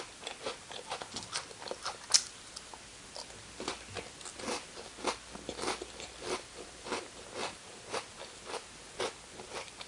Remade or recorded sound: recorded